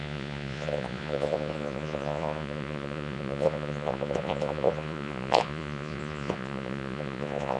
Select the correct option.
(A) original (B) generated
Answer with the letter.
B